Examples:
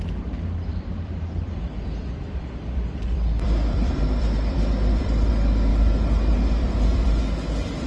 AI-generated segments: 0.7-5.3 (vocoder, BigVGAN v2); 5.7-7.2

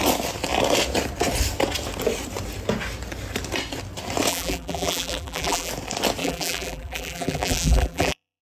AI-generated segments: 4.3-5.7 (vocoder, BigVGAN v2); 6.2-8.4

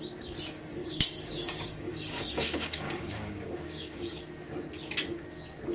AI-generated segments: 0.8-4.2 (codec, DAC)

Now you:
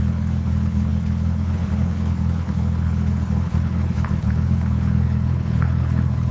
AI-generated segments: 0.0-6.3 (codec, HILCodec)